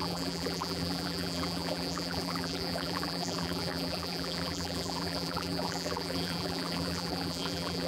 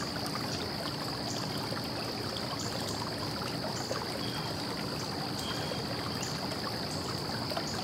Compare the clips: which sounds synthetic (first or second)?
first